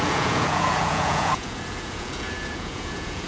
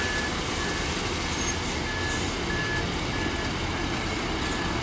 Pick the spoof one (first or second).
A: first